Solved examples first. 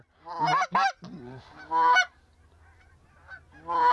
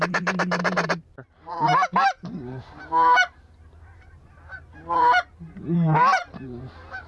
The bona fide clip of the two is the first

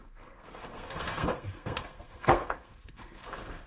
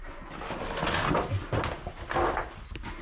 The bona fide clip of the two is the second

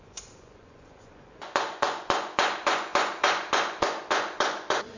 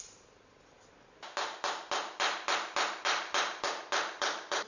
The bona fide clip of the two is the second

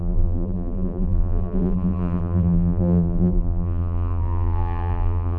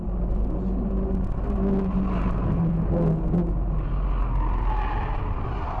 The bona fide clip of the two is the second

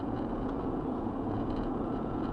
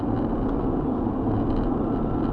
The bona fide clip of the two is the second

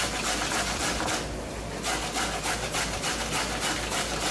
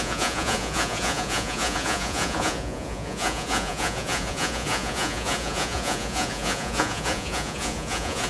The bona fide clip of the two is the first